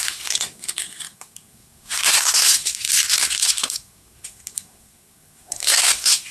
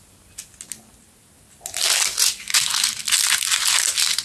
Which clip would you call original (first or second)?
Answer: second